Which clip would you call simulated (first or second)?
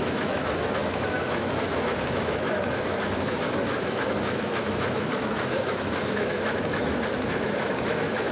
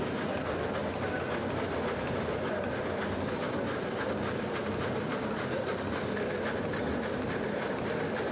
first